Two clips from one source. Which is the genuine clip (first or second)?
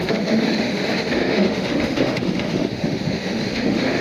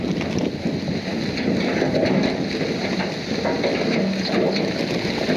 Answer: second